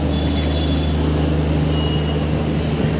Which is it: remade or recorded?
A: recorded